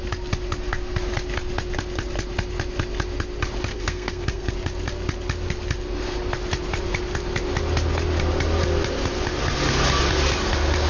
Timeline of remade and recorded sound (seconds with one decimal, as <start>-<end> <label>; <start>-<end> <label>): 0.0-3.7 recorded; 3.7-4.5 remade; 4.5-10.9 recorded